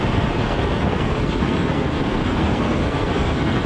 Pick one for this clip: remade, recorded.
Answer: remade